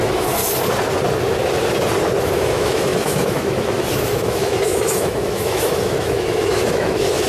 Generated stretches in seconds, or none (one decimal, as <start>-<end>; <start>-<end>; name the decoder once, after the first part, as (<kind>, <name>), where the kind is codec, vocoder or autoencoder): 0.0-0.4 (autoencoder, DAC-VAE); 2.2-7.3